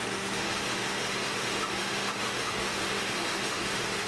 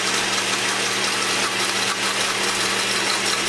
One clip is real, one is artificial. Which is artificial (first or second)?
first